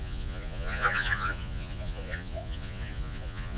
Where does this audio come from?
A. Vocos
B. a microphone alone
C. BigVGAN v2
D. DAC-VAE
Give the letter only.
A